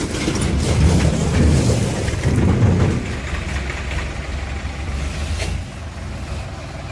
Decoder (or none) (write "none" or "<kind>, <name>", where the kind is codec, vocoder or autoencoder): none